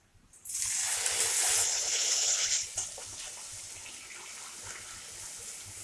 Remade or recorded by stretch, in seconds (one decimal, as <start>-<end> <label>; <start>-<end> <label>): 0.0-1.7 recorded; 1.7-2.5 remade; 2.5-5.8 recorded